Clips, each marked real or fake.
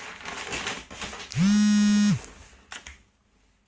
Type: real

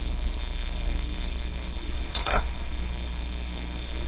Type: fake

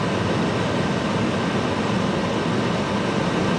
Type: real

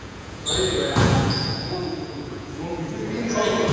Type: fake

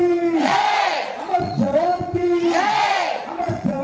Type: fake